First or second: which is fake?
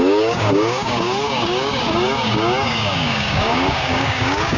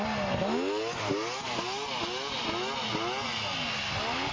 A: first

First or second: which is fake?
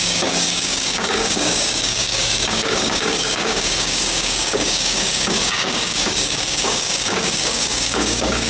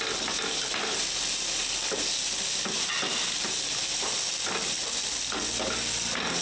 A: first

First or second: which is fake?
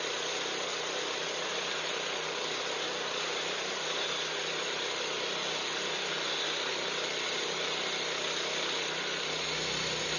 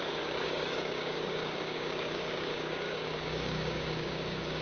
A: second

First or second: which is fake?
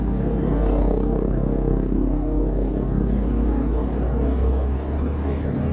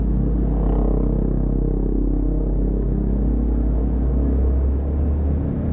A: first